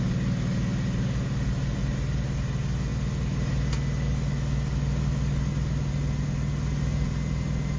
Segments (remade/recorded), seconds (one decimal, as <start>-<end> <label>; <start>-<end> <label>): 0.0-7.8 recorded